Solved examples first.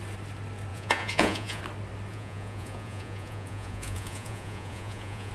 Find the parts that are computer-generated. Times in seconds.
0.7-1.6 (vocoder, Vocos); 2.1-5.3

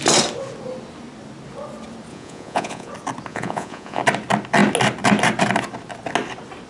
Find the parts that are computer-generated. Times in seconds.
2.1-2.9 (vocoder, Vocos); 3.3-4.0

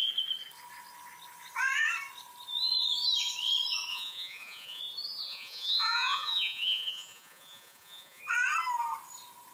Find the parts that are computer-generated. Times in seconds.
3.9-4.8 (vocoder, Vocos); 5.3-8.2

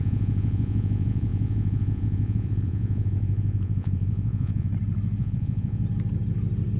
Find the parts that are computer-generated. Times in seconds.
0.0-4.7 (vocoder, Vocos); 5.2-5.8

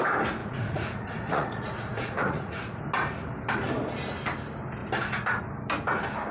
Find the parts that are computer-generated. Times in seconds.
0.4-2.8 (vocoder, Vocos)

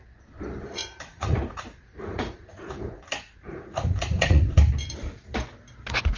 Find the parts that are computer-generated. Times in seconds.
0.8-4.5 (vocoder, Vocos)

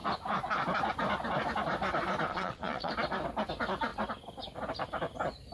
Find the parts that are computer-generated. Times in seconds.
2.3-2.9 (vocoder, Vocos)